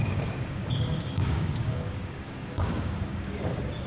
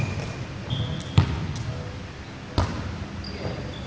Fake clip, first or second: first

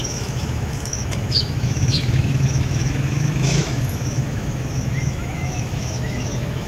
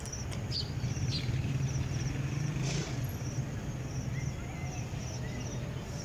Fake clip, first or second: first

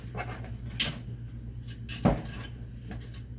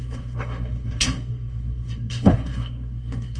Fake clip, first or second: second